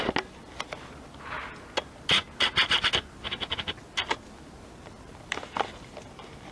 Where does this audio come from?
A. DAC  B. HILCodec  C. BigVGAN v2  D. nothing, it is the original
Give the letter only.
D